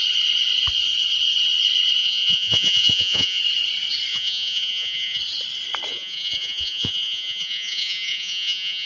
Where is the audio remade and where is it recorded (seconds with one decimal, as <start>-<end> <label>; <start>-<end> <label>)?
0.0-2.0 recorded; 2.0-3.4 remade; 3.4-4.1 recorded; 4.1-5.2 remade; 5.2-5.9 recorded; 5.9-8.9 remade